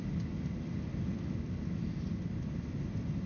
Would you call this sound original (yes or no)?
yes